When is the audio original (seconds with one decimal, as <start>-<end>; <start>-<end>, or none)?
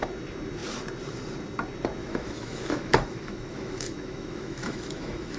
0.0-2.0